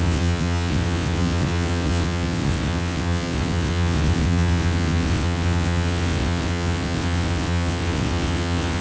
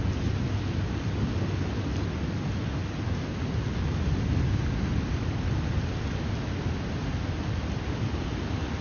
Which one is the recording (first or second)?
second